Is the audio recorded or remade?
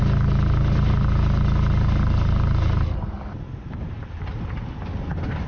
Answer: recorded